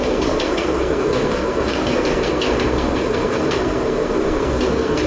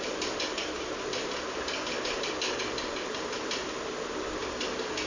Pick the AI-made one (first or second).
first